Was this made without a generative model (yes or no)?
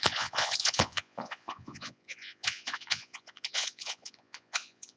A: no